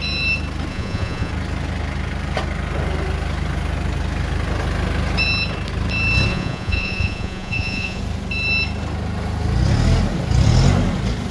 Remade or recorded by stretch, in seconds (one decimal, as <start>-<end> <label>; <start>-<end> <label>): 0.0-0.7 recorded; 0.7-1.3 remade; 1.3-6.3 recorded; 6.3-8.0 remade; 8.0-11.3 recorded